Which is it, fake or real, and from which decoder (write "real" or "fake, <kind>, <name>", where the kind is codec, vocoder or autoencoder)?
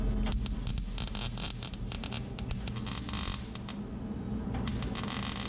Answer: real